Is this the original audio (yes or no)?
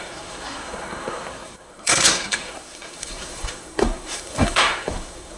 no